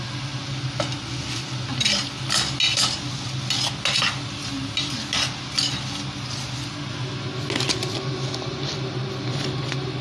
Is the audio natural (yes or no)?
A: yes